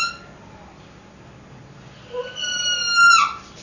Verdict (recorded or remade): recorded